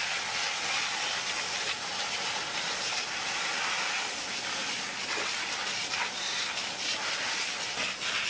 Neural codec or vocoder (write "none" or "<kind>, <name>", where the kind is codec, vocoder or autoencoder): none